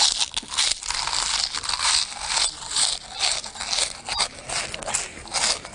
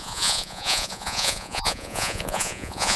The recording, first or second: first